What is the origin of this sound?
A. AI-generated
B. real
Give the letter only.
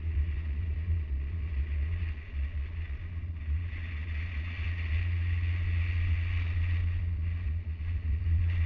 A